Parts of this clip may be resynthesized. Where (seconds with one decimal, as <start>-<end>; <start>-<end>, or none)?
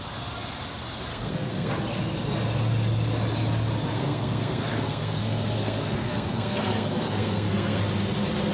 1.1-1.7; 3.9-7.8